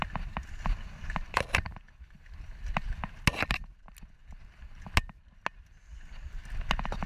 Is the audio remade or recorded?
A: recorded